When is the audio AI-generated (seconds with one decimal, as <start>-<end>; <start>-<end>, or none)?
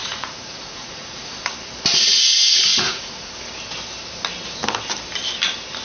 0.0-1.2; 2.7-3.3